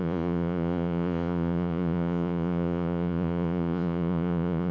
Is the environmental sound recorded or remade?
remade